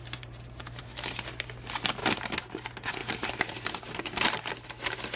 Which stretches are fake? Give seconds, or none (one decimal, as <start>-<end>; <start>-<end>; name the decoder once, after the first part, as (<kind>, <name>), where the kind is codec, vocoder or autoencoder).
0.0-0.8 (vocoder, BigVGAN v2); 3.0-4.5